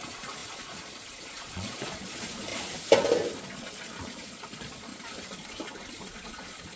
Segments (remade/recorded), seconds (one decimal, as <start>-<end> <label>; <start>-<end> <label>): 0.0-2.5 remade; 2.5-3.4 recorded; 3.4-4.9 remade; 4.9-5.9 recorded; 5.9-6.8 remade